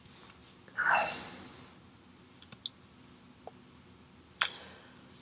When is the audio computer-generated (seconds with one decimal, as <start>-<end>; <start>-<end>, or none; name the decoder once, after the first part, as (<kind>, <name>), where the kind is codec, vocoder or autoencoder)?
none